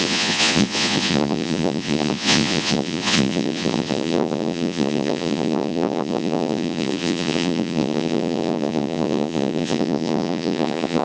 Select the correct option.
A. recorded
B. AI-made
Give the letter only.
B